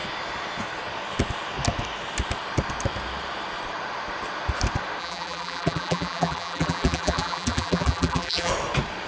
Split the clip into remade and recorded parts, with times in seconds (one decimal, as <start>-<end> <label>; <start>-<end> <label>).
0.0-5.0 recorded; 5.0-8.5 remade; 8.5-9.1 recorded